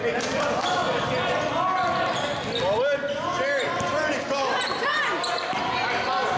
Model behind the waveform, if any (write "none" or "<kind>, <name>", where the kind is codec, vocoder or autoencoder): none